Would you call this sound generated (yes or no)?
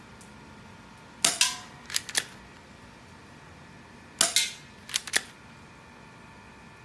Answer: no